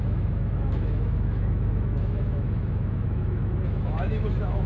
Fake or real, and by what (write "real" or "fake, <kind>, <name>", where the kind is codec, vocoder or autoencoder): fake, autoencoder, DAC-VAE